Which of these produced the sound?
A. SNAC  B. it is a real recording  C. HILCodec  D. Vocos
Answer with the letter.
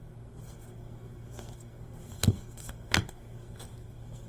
A